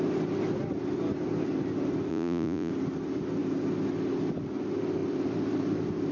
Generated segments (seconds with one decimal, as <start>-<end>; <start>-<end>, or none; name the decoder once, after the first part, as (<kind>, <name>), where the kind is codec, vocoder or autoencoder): 2.1-2.7 (vocoder, Vocos)